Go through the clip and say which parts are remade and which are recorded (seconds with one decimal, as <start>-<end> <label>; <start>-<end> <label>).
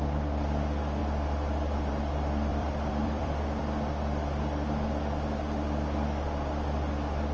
0.0-2.5 recorded; 2.5-3.6 remade; 3.6-7.3 recorded